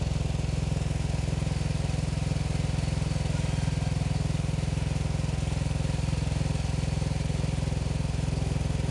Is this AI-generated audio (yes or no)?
no